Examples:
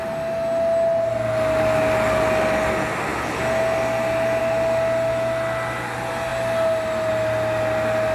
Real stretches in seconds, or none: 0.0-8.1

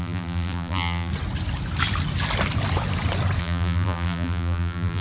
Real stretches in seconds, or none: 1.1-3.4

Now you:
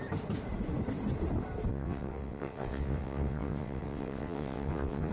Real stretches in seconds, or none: 0.0-1.7

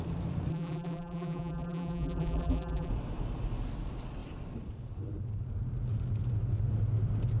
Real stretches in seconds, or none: 0.0-0.5; 2.9-7.4